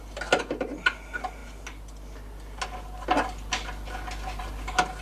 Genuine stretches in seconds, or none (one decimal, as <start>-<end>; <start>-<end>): 0.0-5.0